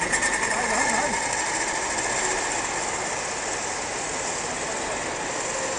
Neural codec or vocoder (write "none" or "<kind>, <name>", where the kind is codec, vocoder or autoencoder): none